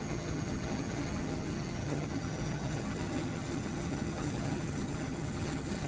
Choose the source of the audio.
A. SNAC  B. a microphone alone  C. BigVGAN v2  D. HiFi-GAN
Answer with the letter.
D